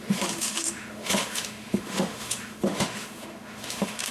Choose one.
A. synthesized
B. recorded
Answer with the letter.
A